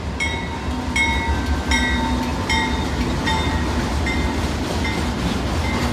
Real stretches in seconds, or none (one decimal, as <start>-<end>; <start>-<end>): 0.0-5.9